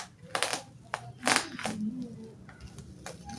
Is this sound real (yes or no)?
yes